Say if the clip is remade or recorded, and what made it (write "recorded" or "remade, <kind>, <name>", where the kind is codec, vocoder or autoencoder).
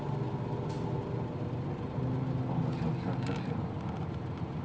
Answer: recorded